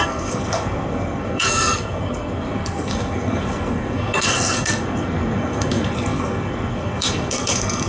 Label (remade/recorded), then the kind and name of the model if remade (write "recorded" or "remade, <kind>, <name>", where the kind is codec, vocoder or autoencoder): remade, codec, SNAC